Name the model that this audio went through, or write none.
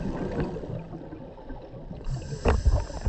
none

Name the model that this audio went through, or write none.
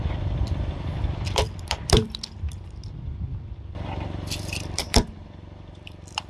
vocoder, BigVGAN v2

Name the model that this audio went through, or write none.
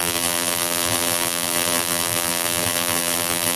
vocoder, BigVGAN v2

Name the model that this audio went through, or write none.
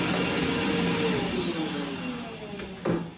none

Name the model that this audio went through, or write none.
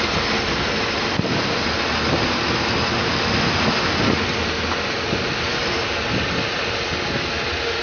none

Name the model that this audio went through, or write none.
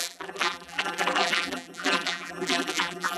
vocoder, BigVGAN v2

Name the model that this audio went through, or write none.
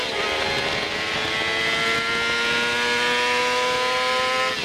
none